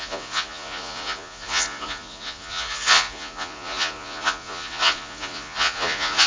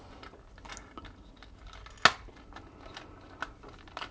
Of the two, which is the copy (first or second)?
first